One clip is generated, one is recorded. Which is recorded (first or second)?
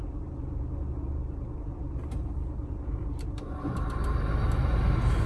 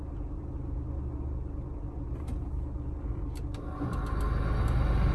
second